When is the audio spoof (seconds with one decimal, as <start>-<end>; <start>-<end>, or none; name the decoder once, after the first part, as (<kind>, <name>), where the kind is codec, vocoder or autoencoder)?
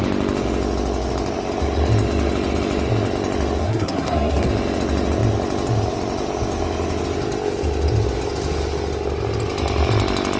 3.6-4.5 (codec, SNAC)